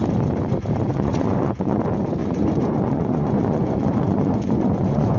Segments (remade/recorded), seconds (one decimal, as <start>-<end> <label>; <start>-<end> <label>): 0.0-0.9 recorded; 0.9-1.8 remade; 1.8-2.2 recorded; 2.2-5.2 remade